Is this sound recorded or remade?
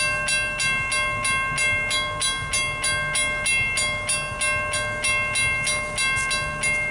recorded